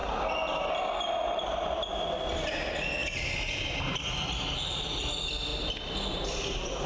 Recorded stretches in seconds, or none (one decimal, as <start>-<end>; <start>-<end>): 0.0-6.9